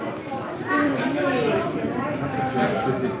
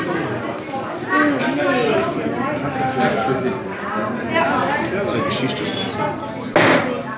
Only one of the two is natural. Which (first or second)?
second